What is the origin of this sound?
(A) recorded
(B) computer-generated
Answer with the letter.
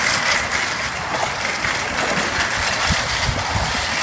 B